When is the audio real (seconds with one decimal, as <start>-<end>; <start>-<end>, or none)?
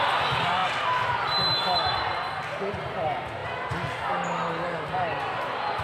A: 0.0-5.8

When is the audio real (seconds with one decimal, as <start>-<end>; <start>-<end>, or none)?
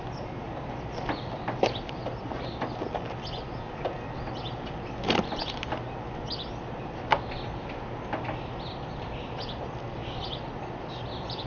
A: 0.0-11.5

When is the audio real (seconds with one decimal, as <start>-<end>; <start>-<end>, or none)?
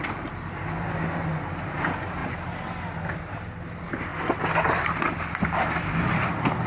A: 0.0-6.7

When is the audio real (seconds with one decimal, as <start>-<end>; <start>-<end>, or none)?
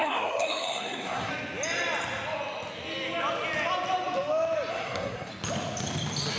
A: 1.3-4.7; 5.3-6.4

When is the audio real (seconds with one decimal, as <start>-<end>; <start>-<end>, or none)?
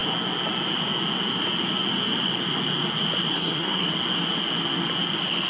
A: 0.0-3.3; 3.9-5.5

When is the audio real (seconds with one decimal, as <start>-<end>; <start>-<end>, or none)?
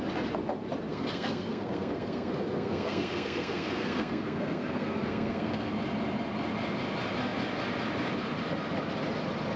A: 0.0-0.9; 5.7-9.6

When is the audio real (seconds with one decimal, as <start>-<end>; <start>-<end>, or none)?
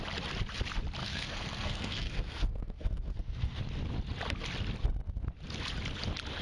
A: 0.0-1.0; 3.6-6.4